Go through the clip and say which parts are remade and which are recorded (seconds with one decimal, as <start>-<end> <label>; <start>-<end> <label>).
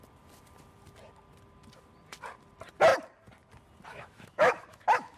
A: 0.0-3.9 recorded; 3.9-5.2 remade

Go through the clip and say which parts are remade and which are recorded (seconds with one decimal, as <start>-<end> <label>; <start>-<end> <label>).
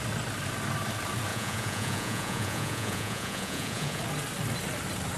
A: 0.0-1.3 recorded; 1.3-4.0 remade; 4.0-5.2 recorded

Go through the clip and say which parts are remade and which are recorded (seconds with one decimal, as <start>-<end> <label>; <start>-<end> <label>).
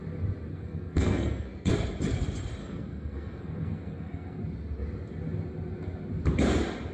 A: 0.0-0.5 recorded; 0.5-1.7 remade; 1.7-2.6 recorded; 2.6-4.4 remade; 4.4-6.9 recorded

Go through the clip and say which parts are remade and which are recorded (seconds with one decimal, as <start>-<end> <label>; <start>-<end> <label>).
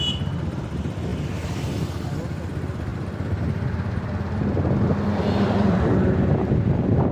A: 0.0-1.1 remade; 1.1-2.0 recorded; 2.0-7.1 remade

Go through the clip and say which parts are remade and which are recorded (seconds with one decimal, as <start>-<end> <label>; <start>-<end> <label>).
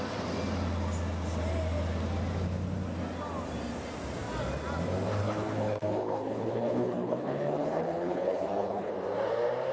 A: 0.0-5.2 recorded; 5.2-8.9 remade; 8.9-9.7 recorded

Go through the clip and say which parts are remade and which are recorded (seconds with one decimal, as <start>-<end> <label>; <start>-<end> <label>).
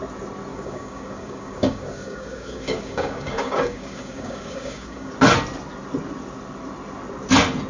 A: 0.0-0.5 recorded; 0.5-5.1 remade; 5.1-7.7 recorded